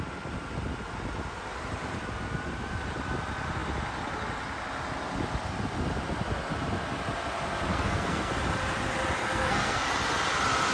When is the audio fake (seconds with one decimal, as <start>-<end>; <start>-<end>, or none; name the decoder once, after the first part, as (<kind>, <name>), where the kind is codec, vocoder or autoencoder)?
7.7-8.3 (codec, SNAC); 9.2-9.9